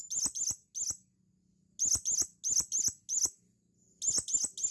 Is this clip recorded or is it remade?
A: recorded